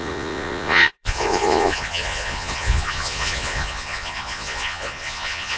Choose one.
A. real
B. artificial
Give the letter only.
B